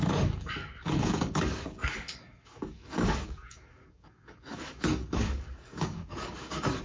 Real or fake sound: fake